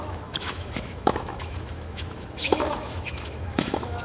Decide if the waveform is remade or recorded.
remade